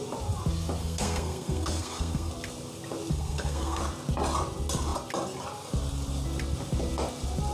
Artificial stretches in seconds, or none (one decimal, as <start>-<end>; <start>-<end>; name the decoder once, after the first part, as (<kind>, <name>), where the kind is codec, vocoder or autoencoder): 0.8-2.3 (codec, SNAC); 3.1-3.8